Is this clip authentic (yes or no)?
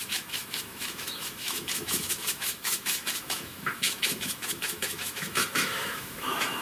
no